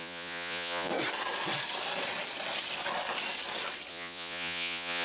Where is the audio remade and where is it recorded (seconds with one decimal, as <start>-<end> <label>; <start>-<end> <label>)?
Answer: 0.0-0.9 remade; 0.9-3.9 recorded; 3.9-5.0 remade